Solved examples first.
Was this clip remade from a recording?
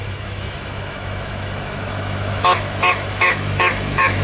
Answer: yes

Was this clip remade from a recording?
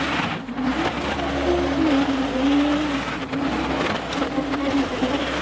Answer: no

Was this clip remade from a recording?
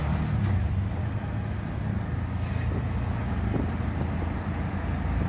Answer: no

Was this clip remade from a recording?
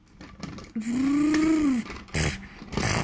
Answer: no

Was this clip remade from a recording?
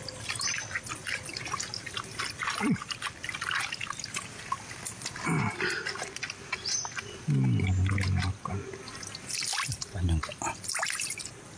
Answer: no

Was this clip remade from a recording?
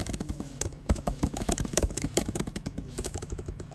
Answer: yes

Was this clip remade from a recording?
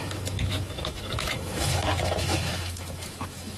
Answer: yes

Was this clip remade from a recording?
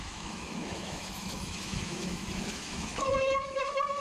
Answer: yes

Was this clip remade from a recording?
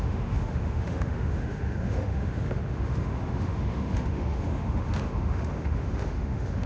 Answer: yes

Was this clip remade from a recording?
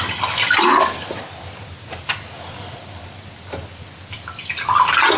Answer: no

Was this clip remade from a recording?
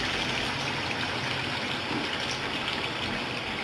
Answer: no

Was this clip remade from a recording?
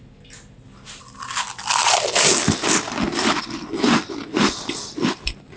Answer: no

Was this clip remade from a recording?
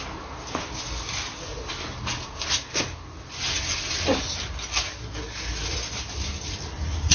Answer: no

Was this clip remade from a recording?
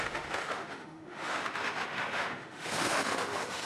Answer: yes